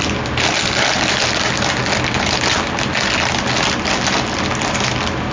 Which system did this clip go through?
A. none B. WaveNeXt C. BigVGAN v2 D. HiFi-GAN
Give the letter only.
A